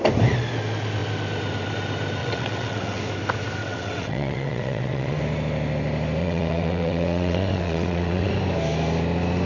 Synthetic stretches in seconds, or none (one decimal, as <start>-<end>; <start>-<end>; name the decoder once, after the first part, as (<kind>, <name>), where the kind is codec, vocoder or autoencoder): 2.2-3.0 (vocoder, WaveNeXt); 3.6-5.2; 6.2-8.3